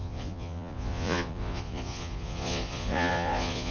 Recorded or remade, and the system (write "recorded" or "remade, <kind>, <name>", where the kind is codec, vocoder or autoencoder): remade, vocoder, Vocos